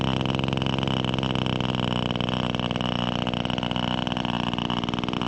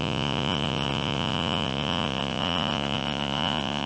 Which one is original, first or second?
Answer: first